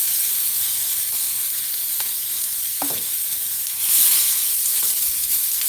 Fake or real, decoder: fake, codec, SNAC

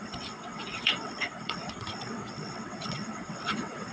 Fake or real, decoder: fake, vocoder, WaveNeXt